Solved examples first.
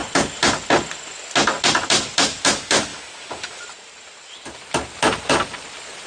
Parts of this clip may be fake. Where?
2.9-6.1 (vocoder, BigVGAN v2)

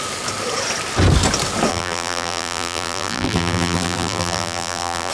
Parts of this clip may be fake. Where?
1.7-5.1 (vocoder, BigVGAN v2)

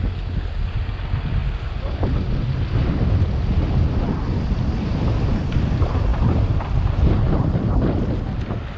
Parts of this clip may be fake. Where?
none